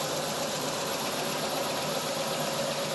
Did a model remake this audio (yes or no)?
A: no